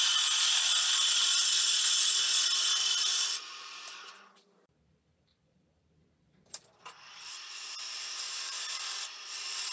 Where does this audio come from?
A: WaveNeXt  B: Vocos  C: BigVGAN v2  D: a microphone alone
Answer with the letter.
C